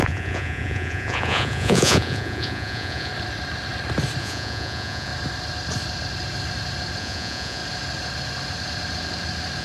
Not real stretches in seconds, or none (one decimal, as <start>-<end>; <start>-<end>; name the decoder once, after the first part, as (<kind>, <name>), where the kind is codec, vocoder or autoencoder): 0.0-3.1 (vocoder, Vocos); 4.2-5.1; 7.0-7.6